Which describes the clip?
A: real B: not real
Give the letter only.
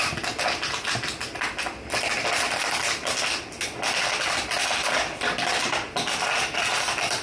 A